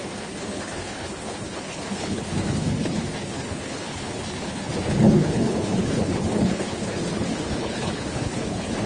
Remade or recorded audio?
remade